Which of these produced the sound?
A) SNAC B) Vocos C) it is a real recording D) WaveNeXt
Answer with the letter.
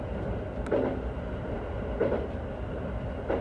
C